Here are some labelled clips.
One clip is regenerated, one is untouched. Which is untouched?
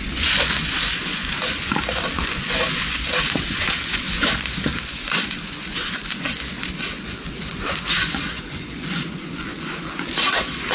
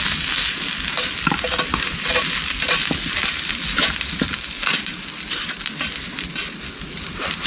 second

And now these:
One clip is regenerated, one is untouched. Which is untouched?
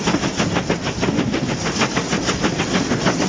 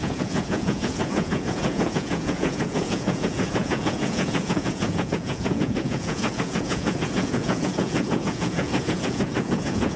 first